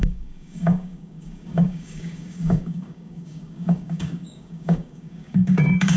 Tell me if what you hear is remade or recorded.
remade